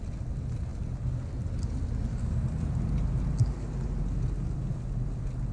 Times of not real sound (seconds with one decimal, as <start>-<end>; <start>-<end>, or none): none